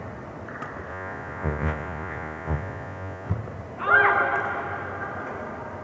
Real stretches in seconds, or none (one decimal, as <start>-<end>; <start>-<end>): 0.0-0.9; 3.3-5.8